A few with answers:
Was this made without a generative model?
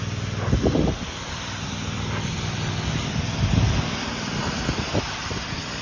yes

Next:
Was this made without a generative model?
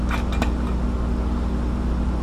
yes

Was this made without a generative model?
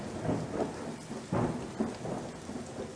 yes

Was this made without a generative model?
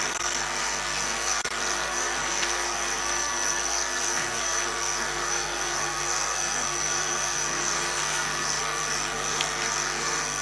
no